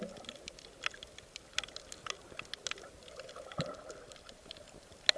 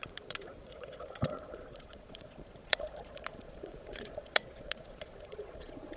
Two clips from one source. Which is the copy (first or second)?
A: second